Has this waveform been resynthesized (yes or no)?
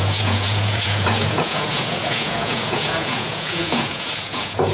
yes